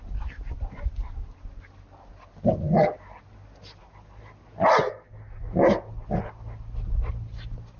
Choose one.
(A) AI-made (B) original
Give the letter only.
B